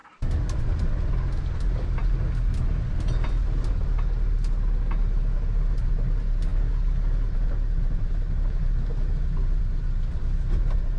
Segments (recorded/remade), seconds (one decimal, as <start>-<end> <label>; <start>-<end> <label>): 0.0-11.0 recorded